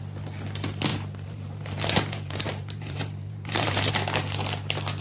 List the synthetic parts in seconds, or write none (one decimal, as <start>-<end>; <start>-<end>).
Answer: 0.9-3.9